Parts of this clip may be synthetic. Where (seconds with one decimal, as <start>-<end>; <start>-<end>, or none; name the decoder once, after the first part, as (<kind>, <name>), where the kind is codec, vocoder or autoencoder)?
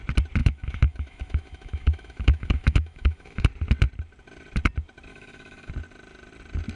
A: 0.4-3.5 (autoencoder, DAC-VAE); 5.1-5.7